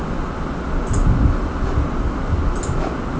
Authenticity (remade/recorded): recorded